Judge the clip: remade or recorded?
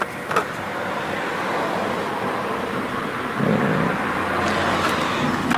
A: recorded